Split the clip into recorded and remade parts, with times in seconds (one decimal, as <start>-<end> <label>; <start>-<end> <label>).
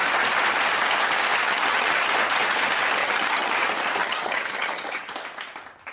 0.0-1.4 recorded; 1.4-1.9 remade; 1.9-3.0 recorded; 3.0-3.5 remade; 3.5-4.0 recorded; 4.0-5.1 remade; 5.1-5.9 recorded